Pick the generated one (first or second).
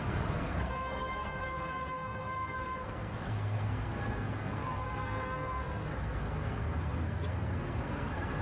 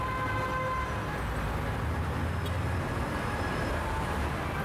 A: first